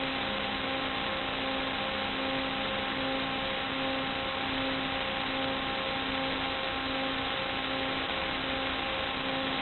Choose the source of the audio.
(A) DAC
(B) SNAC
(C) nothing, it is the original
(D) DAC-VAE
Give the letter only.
C